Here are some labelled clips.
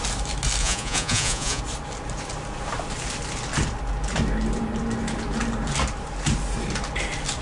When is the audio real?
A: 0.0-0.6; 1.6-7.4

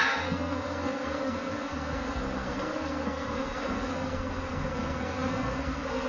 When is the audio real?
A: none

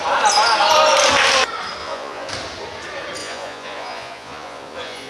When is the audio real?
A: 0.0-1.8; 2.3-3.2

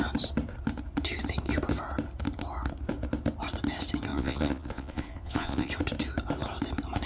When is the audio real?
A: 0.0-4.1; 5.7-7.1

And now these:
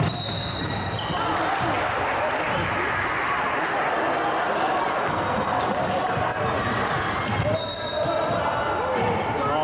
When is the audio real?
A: 0.0-5.0; 5.6-9.6

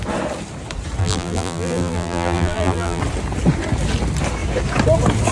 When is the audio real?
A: 0.0-1.0; 3.0-5.3

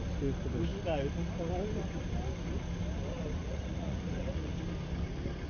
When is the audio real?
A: 0.0-3.4; 4.5-5.5

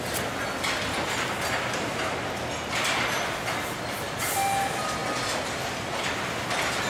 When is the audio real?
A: 0.0-6.9